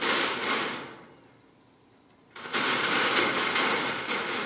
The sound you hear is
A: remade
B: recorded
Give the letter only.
B